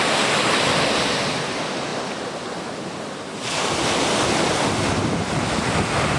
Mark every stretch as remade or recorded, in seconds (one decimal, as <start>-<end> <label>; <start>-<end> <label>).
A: 0.0-6.2 recorded